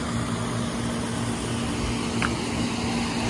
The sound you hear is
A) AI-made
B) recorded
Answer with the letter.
B